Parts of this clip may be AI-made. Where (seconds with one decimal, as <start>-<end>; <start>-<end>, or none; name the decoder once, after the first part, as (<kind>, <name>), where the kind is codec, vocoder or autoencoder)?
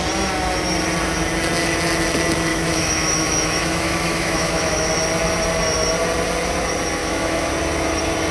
2.5-4.9 (autoencoder, DAC-VAE); 7.0-7.5